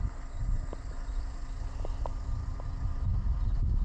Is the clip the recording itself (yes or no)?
yes